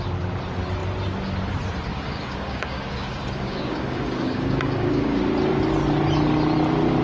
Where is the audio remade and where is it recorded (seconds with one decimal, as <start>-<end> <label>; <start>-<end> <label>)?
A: 0.0-1.9 recorded; 1.9-5.2 remade; 5.2-7.0 recorded